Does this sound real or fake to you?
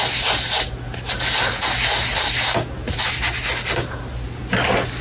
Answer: real